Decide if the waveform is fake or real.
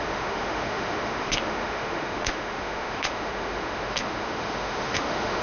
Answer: fake